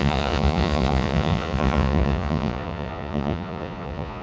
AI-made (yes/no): yes